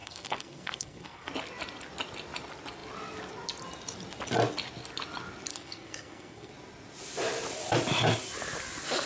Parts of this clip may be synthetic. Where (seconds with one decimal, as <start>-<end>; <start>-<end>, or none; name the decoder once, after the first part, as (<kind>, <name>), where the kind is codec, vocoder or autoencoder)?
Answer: 0.0-1.3 (codec, SNAC); 5.5-6.5